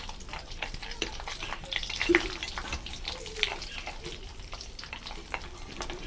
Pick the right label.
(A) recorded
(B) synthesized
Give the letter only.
B